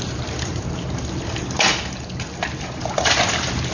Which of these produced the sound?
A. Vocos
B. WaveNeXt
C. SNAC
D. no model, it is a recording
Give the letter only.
D